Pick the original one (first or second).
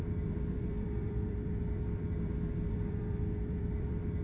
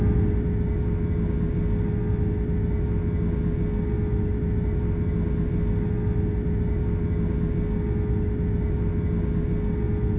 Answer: second